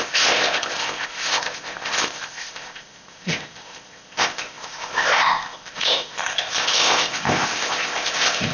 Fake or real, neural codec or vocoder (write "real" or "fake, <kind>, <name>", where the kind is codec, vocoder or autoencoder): fake, codec, ZipCodec